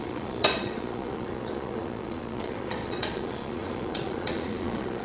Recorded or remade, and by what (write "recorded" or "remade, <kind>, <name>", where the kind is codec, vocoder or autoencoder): remade, vocoder, Vocos